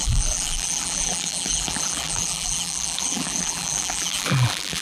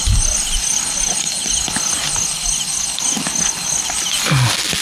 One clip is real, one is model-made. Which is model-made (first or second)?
first